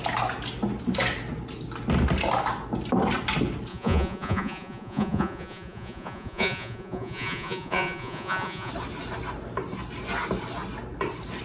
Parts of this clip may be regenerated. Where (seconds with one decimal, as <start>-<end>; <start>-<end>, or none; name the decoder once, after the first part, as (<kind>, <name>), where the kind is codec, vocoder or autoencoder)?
3.7-8.7 (vocoder, Vocos)